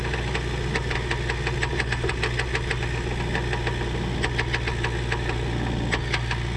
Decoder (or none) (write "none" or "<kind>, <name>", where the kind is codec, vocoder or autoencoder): none